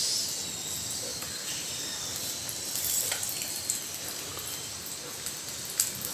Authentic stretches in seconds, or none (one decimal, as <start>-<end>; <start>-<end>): 0.0-1.1; 3.0-6.1